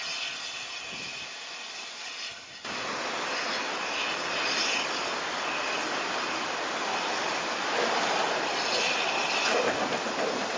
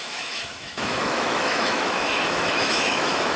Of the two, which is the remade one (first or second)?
second